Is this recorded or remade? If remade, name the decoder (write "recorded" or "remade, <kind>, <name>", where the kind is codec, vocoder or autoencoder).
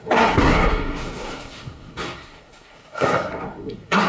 remade, codec, SNAC